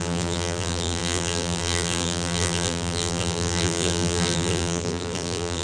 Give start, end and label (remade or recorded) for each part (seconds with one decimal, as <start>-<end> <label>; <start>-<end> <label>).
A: 0.0-5.6 remade